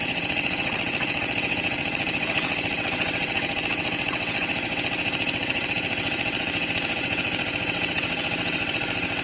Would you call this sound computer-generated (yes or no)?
yes